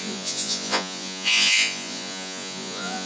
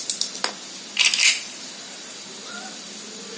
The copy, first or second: first